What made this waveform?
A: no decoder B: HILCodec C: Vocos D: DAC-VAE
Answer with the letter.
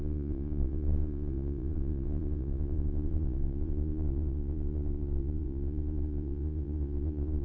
C